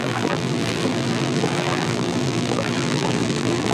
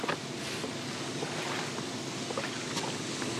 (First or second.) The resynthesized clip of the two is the first